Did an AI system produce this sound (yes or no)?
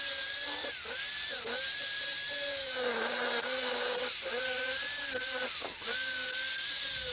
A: no